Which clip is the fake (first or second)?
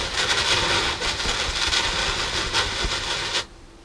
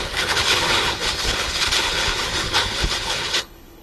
second